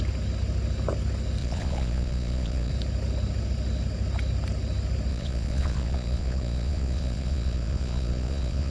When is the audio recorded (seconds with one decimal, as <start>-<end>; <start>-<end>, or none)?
0.0-1.4; 2.7-5.1